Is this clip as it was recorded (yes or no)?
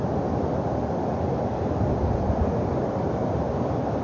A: yes